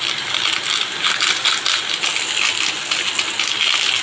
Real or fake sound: real